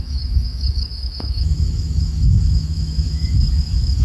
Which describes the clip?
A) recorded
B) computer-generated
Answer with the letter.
B